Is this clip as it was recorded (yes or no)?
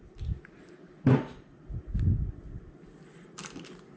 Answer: no